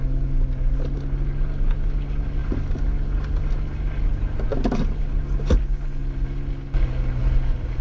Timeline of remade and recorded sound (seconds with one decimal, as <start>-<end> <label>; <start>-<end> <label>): 0.0-7.8 recorded